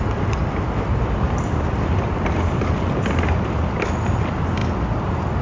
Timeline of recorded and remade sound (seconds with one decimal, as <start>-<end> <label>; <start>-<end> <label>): 0.0-5.4 remade